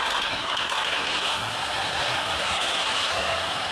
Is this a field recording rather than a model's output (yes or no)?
no